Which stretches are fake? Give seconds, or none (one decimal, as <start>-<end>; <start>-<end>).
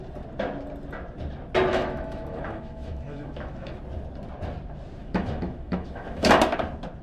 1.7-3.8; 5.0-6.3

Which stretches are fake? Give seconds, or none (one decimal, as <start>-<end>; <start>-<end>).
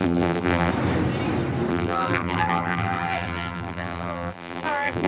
0.0-0.7; 1.7-5.1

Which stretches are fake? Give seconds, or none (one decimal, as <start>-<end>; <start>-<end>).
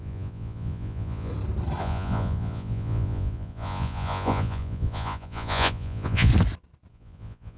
0.0-1.3; 1.8-6.3; 6.9-7.6